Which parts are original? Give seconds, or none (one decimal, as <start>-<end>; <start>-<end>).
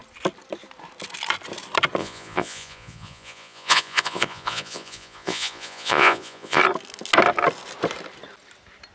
0.0-2.0; 6.6-8.9